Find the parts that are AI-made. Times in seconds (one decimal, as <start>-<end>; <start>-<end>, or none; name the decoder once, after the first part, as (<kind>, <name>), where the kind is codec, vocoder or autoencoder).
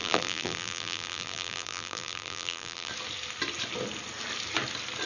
0.0-2.9 (vocoder, BigVGAN v2)